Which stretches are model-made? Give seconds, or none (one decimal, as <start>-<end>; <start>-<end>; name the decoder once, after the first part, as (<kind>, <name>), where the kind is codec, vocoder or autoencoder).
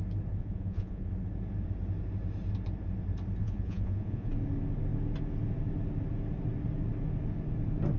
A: 0.4-1.1 (vocoder, Vocos); 3.4-4.3